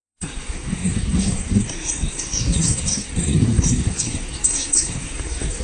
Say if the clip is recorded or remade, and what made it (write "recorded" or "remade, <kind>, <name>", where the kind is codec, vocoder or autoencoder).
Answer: remade, codec, SNAC